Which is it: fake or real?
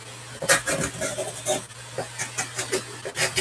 real